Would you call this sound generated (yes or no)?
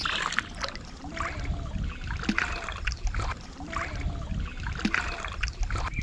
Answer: no